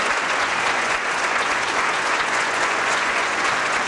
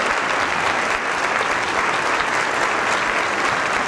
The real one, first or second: second